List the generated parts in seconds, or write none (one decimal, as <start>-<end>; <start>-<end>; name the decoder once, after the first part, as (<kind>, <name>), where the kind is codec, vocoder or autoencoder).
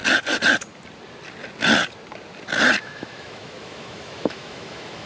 2.8-5.1 (autoencoder, DAC-VAE)